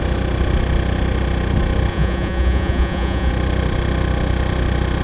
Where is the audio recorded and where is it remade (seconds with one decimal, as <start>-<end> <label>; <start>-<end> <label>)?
0.0-1.9 recorded; 1.9-3.3 remade; 3.3-5.0 recorded